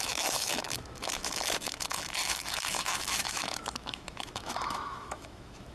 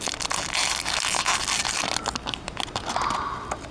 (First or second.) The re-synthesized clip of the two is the first